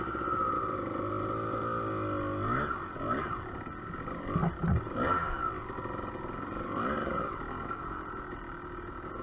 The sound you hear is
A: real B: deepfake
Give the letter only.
A